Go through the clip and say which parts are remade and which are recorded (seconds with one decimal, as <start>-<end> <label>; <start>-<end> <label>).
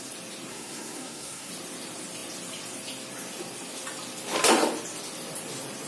0.0-0.5 recorded; 0.5-1.5 remade; 1.5-5.9 recorded